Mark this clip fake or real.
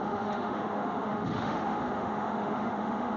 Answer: fake